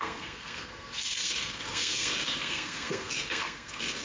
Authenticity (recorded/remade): remade